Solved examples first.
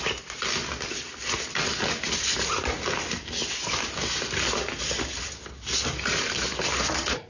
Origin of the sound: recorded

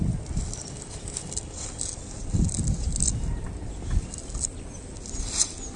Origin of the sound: recorded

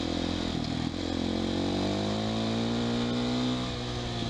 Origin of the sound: recorded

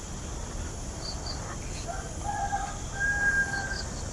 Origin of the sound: recorded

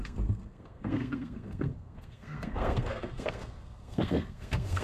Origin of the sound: remade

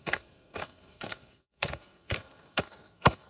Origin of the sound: remade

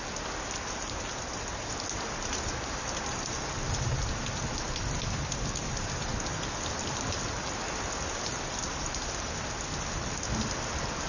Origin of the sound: recorded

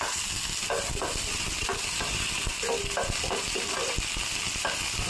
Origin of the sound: recorded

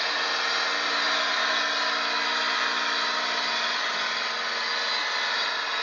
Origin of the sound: recorded